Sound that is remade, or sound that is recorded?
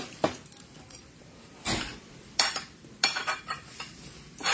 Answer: remade